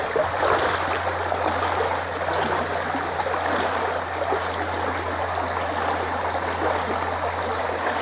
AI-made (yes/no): no